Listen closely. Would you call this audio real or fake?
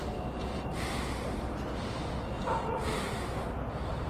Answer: real